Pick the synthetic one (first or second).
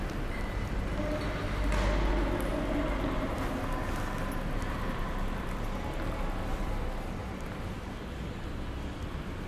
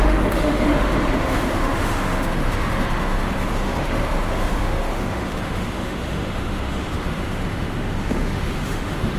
second